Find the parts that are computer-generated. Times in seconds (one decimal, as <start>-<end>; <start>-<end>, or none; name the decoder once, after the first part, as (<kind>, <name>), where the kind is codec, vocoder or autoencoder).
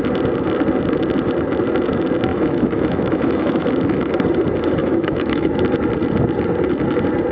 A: 2.3-3.7 (autoencoder, DAC-VAE); 4.8-5.6